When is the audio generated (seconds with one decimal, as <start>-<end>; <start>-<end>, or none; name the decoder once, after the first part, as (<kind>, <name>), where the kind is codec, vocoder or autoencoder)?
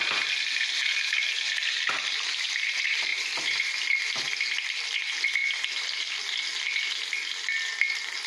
none